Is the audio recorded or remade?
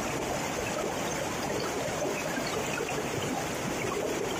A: recorded